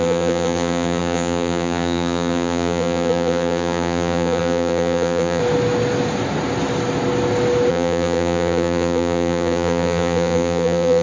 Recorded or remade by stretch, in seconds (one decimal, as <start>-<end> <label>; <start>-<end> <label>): 0.0-5.4 remade; 5.4-7.7 recorded; 7.7-11.0 remade

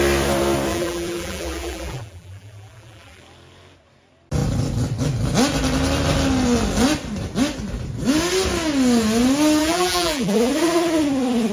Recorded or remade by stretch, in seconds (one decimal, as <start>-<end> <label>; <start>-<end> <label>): 0.0-0.7 recorded; 0.7-3.2 remade; 3.2-9.6 recorded; 9.6-10.5 remade; 10.5-11.5 recorded